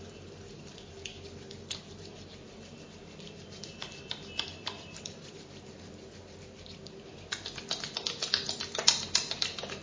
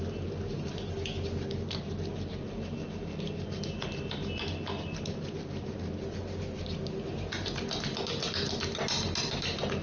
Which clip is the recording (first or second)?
second